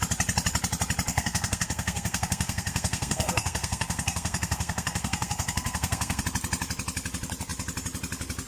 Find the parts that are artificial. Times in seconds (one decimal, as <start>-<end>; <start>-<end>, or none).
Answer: 1.1-6.2